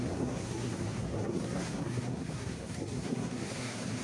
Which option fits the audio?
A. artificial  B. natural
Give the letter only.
A